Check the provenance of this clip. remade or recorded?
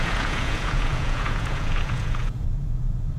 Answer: remade